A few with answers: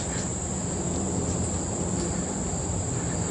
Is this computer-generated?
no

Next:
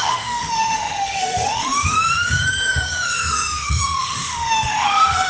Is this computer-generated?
yes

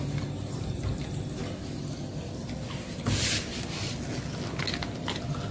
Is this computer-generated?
no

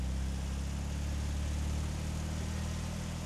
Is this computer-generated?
no